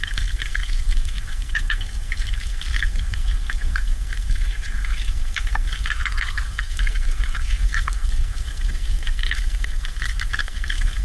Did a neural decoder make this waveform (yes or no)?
yes